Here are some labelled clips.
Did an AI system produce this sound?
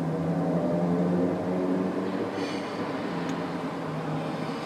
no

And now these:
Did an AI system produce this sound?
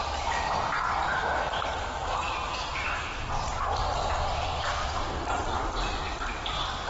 no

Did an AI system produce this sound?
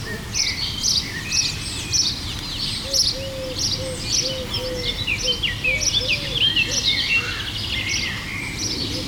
no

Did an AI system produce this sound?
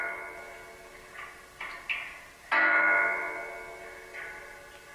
no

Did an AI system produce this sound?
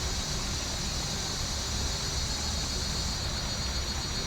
no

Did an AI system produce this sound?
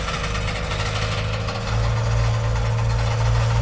no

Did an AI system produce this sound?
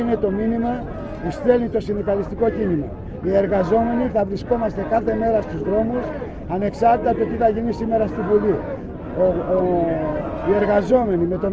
no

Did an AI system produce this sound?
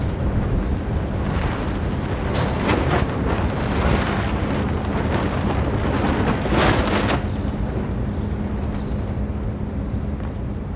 no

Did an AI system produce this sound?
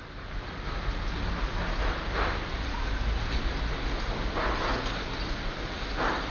no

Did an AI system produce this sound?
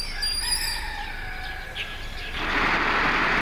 no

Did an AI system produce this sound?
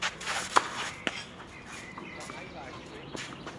no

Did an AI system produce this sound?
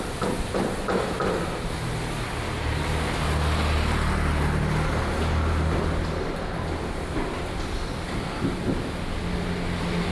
no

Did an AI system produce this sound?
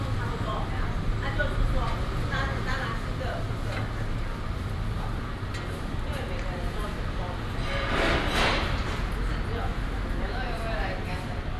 no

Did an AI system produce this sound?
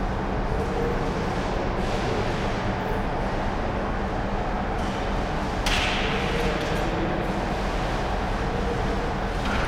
no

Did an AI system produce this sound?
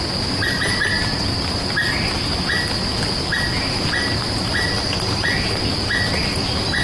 no